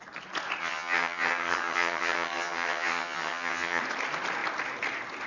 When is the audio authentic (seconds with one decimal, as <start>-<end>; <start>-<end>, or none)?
0.0-0.6; 3.8-5.3

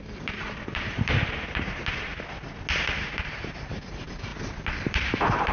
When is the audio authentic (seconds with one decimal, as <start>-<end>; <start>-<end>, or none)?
2.1-3.0; 4.3-4.9

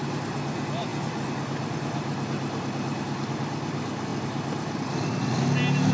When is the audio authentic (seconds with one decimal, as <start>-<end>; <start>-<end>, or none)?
0.0-5.9

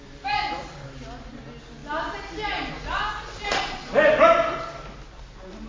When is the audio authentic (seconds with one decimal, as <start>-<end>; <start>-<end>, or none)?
0.0-5.7

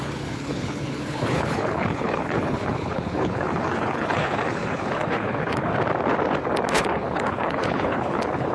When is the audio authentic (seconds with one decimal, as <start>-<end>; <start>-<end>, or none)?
5.7-6.7

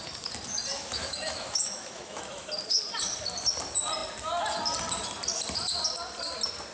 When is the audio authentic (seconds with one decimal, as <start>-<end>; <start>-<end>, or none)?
0.0-0.7; 2.5-6.7

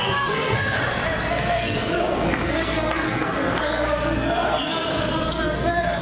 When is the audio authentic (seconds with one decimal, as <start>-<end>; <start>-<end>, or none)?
0.8-1.3